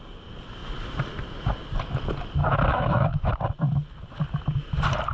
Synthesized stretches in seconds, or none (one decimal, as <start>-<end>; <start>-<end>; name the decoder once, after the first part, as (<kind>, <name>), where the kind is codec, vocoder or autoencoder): 2.4-3.3 (autoencoder, DAC-VAE)

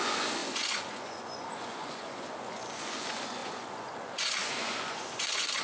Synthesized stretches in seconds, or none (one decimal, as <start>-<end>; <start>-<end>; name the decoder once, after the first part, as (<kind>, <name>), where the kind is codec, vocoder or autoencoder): 0.0-5.6 (vocoder, Vocos)

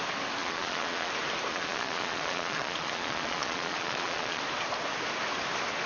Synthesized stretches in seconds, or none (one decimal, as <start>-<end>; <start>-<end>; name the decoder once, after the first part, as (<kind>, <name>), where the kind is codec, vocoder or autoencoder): 0.4-1.1 (vocoder, Vocos); 1.5-4.4

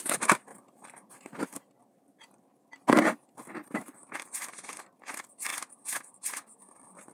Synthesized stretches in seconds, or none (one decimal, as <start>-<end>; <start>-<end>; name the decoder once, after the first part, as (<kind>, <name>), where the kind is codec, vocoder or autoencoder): 0.5-1.4 (vocoder, BigVGAN v2); 3.4-4.5

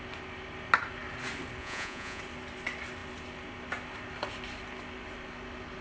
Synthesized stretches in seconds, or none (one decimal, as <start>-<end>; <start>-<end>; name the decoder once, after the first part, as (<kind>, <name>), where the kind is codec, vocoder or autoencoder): 1.6-2.2 (vocoder, Vocos)